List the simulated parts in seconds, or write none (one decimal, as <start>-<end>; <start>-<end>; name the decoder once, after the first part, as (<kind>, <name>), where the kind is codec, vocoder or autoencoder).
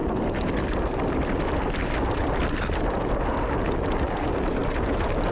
none